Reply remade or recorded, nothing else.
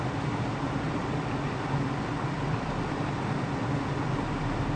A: recorded